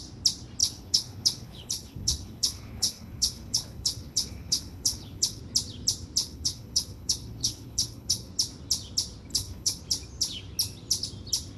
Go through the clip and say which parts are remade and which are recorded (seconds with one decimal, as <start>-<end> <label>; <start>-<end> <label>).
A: 0.0-0.6 recorded; 0.6-5.4 remade; 5.4-6.2 recorded; 6.2-8.3 remade; 8.3-9.3 recorded; 9.3-9.8 remade; 9.8-11.6 recorded